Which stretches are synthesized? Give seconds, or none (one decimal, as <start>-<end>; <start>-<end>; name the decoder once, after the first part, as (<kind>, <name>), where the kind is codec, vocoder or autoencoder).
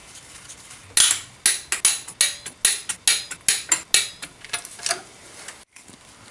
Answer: none